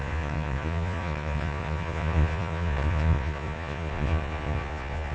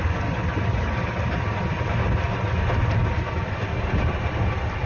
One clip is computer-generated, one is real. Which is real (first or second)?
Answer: second